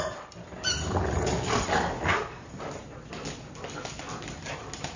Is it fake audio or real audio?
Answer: real